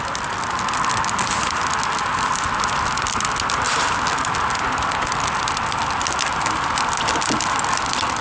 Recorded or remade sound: recorded